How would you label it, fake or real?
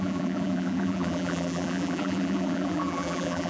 fake